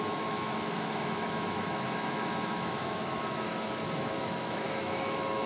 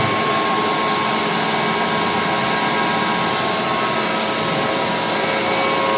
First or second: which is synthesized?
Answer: first